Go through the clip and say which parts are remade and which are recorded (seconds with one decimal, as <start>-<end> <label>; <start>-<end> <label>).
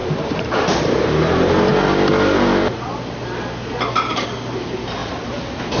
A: 0.0-0.8 remade; 0.8-5.8 recorded